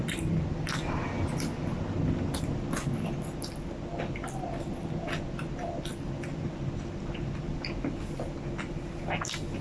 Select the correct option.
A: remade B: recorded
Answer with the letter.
B